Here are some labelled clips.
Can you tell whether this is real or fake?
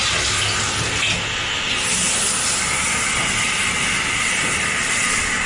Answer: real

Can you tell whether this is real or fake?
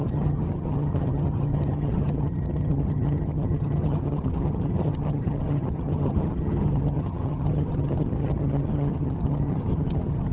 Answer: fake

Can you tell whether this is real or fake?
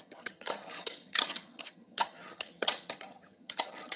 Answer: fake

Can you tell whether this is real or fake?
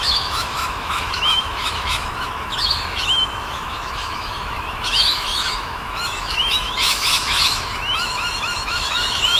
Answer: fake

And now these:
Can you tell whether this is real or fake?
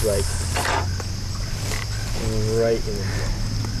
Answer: real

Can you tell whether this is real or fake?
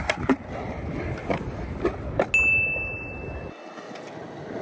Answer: real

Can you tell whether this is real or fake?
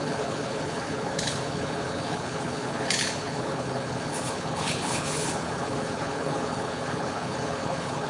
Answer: fake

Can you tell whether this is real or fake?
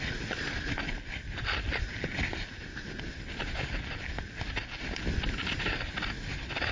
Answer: real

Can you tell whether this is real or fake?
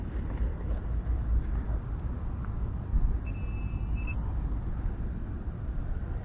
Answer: fake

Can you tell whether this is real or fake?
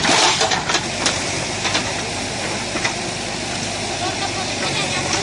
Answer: fake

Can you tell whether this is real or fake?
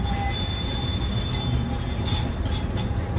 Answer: real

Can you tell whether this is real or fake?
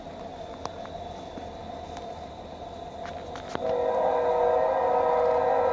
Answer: real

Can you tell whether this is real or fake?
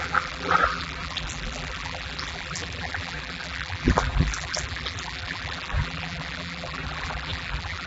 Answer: fake